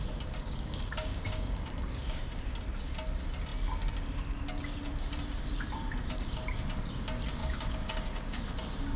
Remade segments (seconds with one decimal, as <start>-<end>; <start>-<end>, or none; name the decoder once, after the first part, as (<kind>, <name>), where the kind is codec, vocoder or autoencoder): 0.4-2.2 (codec, DAC); 7.4-8.5